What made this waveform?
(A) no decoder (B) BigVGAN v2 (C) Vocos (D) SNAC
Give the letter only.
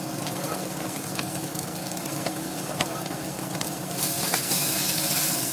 D